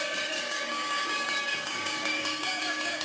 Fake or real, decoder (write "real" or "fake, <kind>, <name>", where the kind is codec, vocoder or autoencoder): fake, codec, DAC